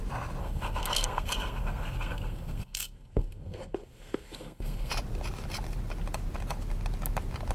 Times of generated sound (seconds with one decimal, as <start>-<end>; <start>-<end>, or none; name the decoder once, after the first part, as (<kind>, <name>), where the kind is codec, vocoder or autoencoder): 0.4-4.9 (codec, SNAC)